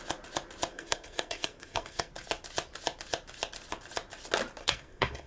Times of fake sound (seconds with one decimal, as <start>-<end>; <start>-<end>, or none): 0.7-2.1; 4.6-5.3